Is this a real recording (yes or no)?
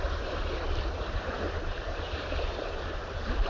no